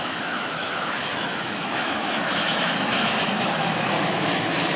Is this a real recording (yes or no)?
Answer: no